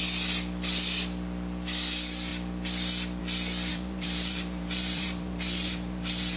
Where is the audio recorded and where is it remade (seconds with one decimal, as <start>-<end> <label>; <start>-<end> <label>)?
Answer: 0.0-3.7 recorded; 3.7-6.4 remade